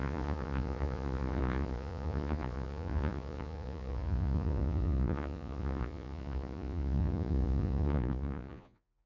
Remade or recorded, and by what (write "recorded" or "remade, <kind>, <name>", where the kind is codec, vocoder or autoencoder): remade, vocoder, Vocos